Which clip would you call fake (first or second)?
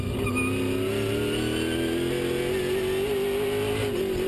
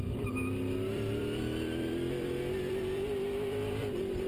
second